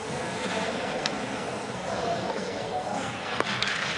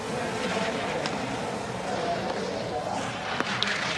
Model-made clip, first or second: first